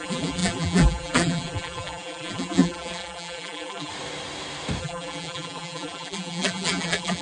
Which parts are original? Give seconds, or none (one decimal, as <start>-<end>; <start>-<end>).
3.9-4.8